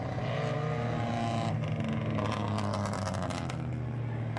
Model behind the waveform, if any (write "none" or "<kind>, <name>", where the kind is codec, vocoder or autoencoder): none